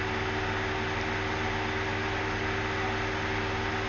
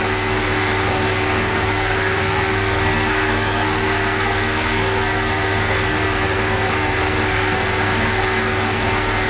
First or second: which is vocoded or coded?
second